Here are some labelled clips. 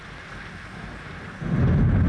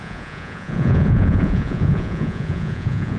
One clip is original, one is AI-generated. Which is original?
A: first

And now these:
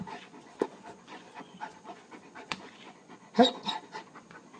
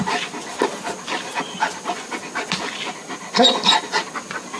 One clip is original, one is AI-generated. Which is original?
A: second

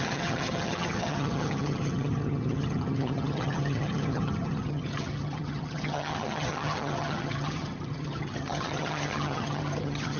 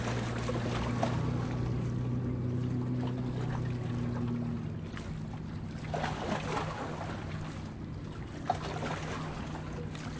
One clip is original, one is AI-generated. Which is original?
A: second